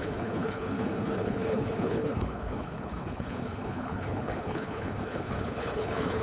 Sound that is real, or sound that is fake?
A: fake